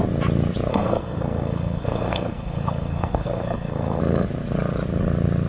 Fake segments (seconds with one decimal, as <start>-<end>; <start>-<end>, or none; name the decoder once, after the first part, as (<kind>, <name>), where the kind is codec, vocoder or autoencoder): 0.7-4.0 (codec, SNAC)